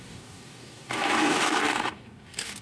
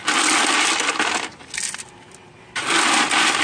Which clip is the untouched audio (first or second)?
second